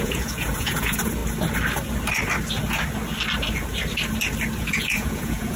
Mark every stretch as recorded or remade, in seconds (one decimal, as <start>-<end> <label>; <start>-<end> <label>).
0.0-1.2 remade; 1.2-4.6 recorded; 4.6-5.6 remade